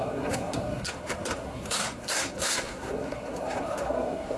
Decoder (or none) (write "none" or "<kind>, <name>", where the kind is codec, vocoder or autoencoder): codec, SNAC